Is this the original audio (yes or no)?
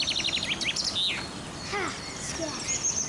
yes